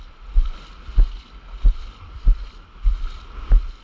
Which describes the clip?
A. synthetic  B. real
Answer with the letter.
B